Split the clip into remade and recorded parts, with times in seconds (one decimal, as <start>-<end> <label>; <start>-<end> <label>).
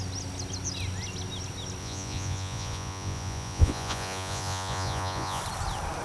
0.0-1.8 recorded; 1.8-5.4 remade; 5.4-6.0 recorded